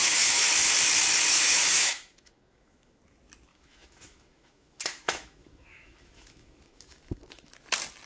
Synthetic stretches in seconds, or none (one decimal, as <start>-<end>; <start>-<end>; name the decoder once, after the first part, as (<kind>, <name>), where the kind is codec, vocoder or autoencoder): 0.0-0.5 (autoencoder, DAC-VAE); 1.3-3.0; 3.5-7.5